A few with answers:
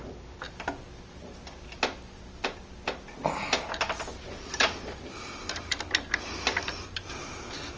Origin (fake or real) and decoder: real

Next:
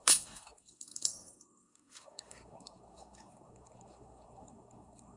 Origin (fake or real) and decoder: fake, codec, SNAC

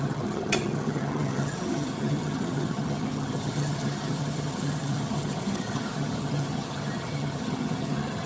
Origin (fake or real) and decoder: fake, vocoder, HiFi-GAN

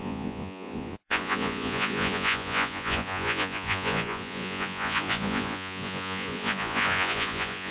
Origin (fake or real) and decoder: fake, vocoder, Vocos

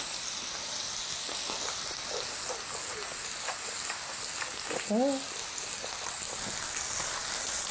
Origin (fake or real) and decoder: real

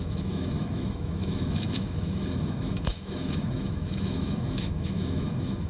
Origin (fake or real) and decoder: fake, autoencoder, DAC-VAE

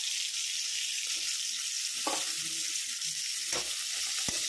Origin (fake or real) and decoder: real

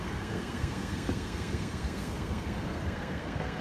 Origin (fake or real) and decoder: fake, codec, SNAC